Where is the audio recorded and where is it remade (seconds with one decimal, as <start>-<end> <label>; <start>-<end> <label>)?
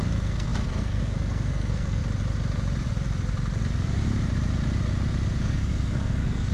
0.0-2.0 remade; 2.0-5.4 recorded; 5.4-6.5 remade